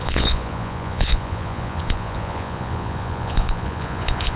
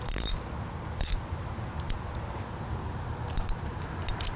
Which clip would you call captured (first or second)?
second